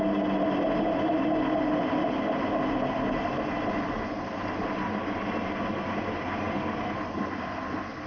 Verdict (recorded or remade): recorded